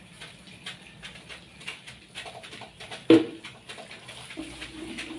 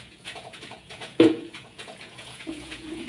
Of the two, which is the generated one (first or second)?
second